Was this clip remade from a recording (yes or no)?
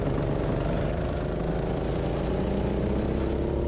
no